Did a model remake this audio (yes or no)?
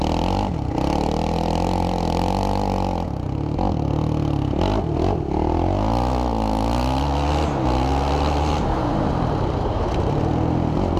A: no